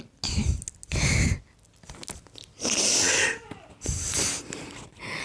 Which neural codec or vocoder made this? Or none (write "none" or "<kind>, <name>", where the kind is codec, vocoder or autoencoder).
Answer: none